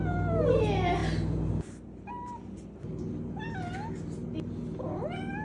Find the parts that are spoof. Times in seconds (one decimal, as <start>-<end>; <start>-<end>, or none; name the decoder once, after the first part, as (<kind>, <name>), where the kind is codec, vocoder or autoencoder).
none